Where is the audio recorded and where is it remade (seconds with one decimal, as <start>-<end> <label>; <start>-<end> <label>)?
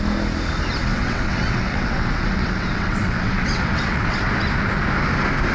0.0-0.9 recorded; 0.9-4.2 remade; 4.2-5.5 recorded